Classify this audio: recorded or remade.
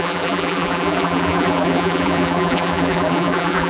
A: remade